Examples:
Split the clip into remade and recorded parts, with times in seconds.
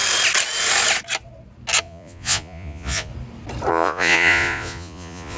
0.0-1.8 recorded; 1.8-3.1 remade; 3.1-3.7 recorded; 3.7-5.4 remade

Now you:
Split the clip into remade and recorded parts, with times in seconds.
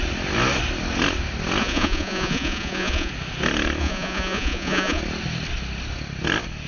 0.0-1.6 recorded; 1.6-3.1 remade; 3.1-3.8 recorded; 3.8-5.0 remade; 5.0-6.7 recorded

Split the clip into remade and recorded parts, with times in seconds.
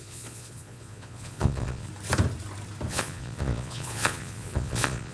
0.0-1.9 remade; 1.9-2.9 recorded; 2.9-5.1 remade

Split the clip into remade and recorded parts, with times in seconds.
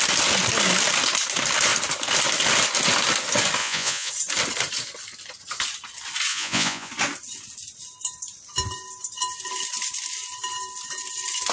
0.0-3.6 recorded; 3.6-4.1 remade; 4.1-6.3 recorded; 6.3-6.9 remade; 6.9-11.5 recorded